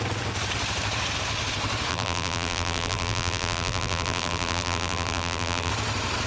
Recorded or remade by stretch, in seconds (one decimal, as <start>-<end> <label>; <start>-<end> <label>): 0.0-1.9 recorded; 1.9-5.7 remade; 5.7-6.3 recorded